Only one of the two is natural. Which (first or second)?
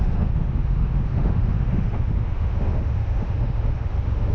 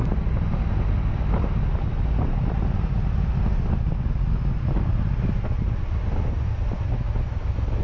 second